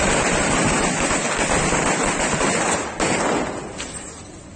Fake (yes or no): no